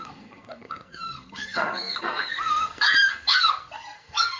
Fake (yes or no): yes